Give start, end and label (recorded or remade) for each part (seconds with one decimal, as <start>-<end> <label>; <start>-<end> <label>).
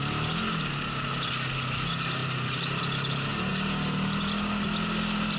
0.0-2.2 recorded; 2.2-2.8 remade; 2.8-5.4 recorded